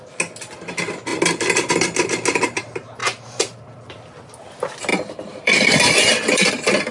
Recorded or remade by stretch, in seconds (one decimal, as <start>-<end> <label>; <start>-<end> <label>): 0.0-3.0 recorded; 3.0-4.0 remade; 4.0-4.9 recorded; 4.9-6.5 remade; 6.5-6.9 recorded